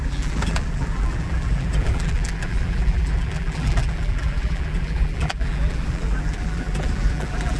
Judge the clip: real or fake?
fake